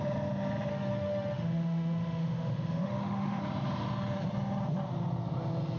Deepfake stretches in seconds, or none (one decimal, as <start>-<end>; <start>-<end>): 0.7-3.4